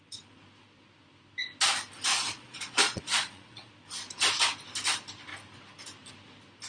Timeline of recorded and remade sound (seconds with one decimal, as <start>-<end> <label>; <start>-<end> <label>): 0.0-2.1 recorded; 2.1-3.7 remade; 3.7-6.7 recorded